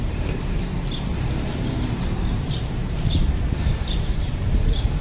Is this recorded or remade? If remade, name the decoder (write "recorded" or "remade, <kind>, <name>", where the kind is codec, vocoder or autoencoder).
remade, vocoder, BigVGAN v2